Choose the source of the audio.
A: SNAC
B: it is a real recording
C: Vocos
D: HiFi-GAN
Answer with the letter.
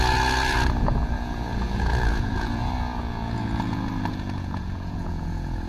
C